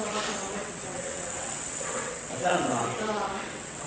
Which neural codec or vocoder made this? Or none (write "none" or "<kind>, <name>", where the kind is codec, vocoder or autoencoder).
vocoder, WaveNeXt